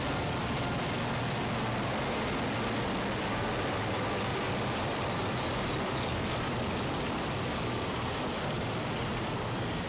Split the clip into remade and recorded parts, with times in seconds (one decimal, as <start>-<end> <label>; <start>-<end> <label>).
0.0-4.3 recorded; 4.3-9.9 remade